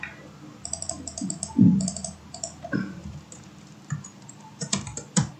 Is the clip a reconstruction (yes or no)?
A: yes